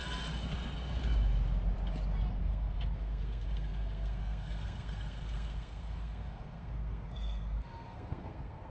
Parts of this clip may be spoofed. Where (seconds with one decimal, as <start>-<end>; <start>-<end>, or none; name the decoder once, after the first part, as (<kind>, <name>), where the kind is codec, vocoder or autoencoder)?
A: 2.4-8.7 (codec, SNAC)